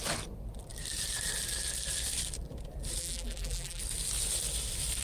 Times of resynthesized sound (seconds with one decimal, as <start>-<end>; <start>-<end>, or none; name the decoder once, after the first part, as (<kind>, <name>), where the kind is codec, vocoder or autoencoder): 3.0-3.8 (vocoder, BigVGAN v2)

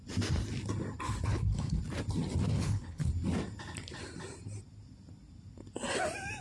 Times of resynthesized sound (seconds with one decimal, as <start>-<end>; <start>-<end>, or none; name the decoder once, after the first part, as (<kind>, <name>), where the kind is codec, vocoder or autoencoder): 1.3-1.8 (codec, HILCodec); 2.5-3.1

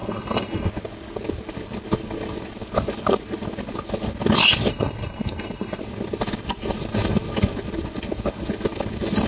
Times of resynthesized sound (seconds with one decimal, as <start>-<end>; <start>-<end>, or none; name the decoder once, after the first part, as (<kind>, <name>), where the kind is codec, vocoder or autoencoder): 0.0-0.7 (codec, SNAC); 4.7-5.8

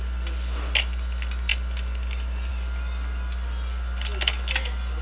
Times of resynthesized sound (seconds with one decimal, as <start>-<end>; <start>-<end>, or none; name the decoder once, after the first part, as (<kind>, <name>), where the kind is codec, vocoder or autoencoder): none